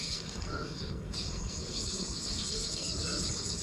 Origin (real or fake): fake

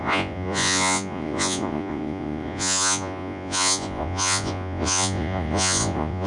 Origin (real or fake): fake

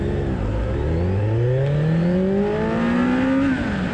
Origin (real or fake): real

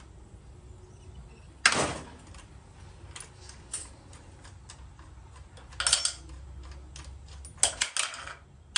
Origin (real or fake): real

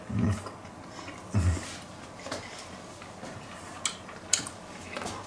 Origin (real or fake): real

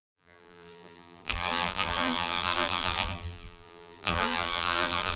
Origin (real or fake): fake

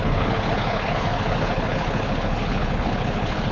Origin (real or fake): fake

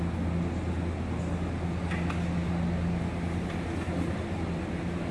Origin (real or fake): real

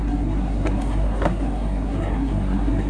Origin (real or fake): fake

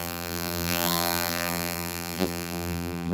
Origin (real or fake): fake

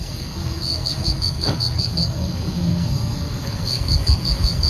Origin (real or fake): fake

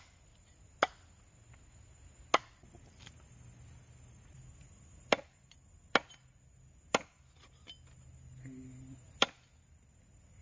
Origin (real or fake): real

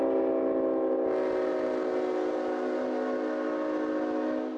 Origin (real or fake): real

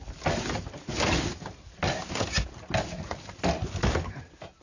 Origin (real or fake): real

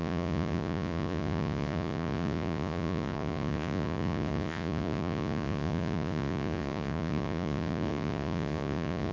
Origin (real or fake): fake